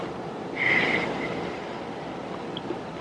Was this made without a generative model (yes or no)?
yes